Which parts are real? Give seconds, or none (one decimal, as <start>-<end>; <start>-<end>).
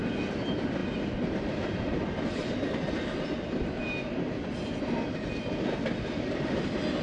0.0-7.0